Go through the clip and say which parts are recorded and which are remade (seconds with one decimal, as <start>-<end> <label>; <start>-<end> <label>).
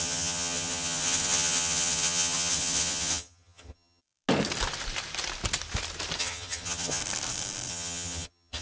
0.0-4.0 remade; 4.0-6.2 recorded; 6.2-7.0 remade; 7.0-7.7 recorded; 7.7-8.6 remade